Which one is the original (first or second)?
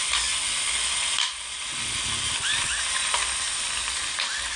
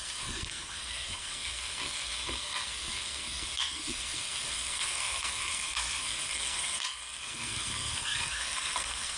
first